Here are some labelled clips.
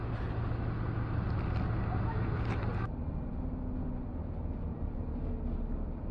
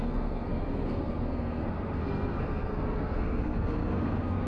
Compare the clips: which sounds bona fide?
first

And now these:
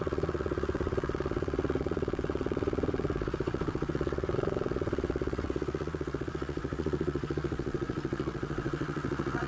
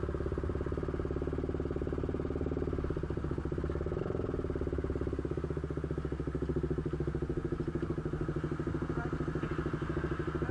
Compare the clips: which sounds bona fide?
second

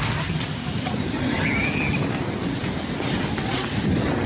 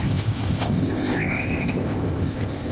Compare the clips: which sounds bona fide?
first